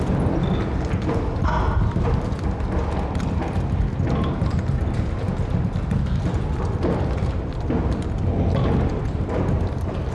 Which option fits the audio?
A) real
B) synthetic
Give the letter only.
A